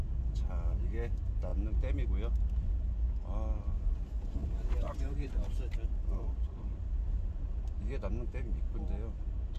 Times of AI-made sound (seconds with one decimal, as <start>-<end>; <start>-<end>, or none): 4.4-5.5; 6.0-6.7